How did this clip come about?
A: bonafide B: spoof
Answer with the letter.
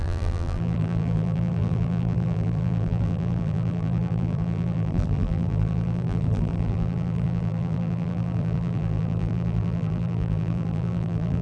B